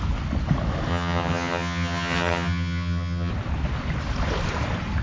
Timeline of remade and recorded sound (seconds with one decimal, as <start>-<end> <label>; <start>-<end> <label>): 0.0-0.9 recorded; 0.9-3.3 remade; 3.3-5.0 recorded

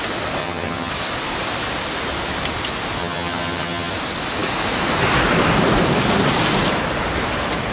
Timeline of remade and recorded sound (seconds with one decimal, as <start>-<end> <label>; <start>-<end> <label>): 0.0-0.4 recorded; 0.4-0.9 remade; 0.9-3.0 recorded; 3.0-3.9 remade; 3.9-7.7 recorded

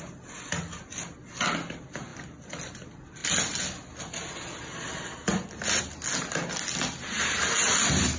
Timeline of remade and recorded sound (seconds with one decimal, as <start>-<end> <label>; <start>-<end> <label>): 0.0-8.2 recorded

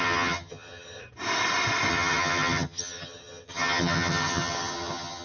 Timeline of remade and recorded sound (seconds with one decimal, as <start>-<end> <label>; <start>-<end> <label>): 0.0-1.0 remade; 1.0-1.9 recorded; 1.9-5.2 remade

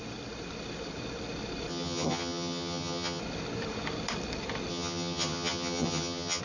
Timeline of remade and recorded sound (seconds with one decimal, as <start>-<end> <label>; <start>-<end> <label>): 0.0-1.7 recorded; 1.7-3.2 remade; 3.2-4.7 recorded; 4.7-6.4 remade

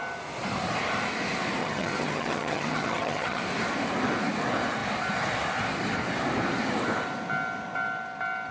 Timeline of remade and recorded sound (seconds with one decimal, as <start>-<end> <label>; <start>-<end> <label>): 0.0-1.6 recorded; 1.6-3.4 remade; 3.4-8.5 recorded

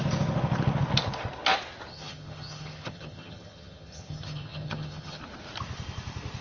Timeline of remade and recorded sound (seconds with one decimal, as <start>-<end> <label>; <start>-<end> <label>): 0.0-1.9 recorded; 1.9-5.2 remade; 5.2-6.4 recorded

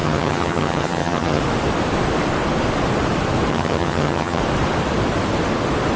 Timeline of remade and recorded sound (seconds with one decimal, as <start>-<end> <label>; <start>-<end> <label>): 0.0-1.4 remade; 1.4-3.5 recorded; 3.5-4.4 remade; 4.4-6.0 recorded